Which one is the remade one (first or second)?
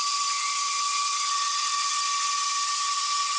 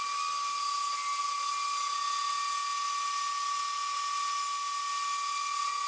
first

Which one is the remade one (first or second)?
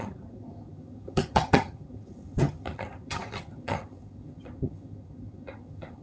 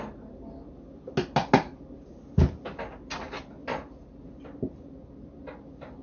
first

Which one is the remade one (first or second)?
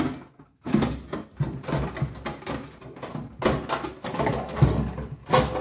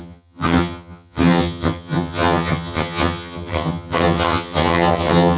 second